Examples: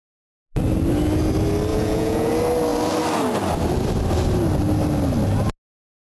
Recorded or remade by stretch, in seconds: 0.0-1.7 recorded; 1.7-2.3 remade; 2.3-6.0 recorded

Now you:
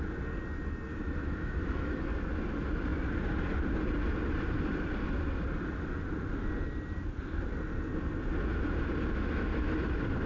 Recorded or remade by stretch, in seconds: 0.0-0.9 recorded; 0.9-2.0 remade; 2.0-10.3 recorded

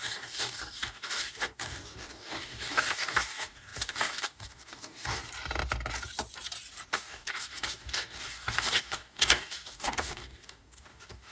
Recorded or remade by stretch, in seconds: 0.0-5.2 remade; 5.2-6.9 recorded; 6.9-11.3 remade

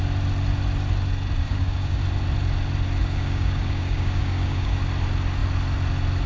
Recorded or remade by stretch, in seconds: 0.0-1.4 recorded; 1.4-2.0 remade; 2.0-3.0 recorded; 3.0-4.8 remade; 4.8-6.3 recorded

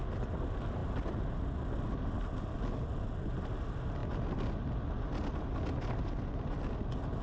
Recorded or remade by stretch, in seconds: 0.0-7.2 recorded

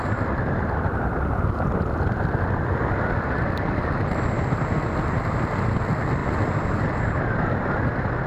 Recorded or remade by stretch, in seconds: 0.0-8.3 recorded